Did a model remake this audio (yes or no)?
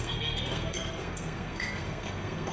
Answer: yes